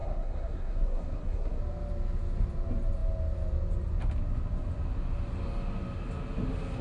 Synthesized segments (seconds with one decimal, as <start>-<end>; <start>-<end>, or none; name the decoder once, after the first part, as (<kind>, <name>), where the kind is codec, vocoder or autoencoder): 0.0-1.6 (codec, SNAC)